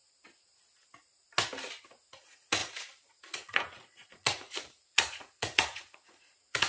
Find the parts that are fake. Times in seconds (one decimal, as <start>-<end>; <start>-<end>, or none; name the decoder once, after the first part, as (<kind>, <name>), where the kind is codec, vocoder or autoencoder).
2.1-6.7 (vocoder, Vocos)